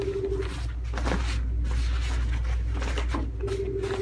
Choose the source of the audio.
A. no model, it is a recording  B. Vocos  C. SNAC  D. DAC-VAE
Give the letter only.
A